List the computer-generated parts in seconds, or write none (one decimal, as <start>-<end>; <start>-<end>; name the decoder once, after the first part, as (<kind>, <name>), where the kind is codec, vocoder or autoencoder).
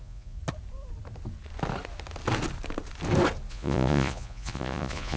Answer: 0.0-0.4 (vocoder, Vocos); 3.5-5.2